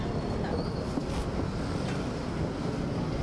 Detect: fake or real real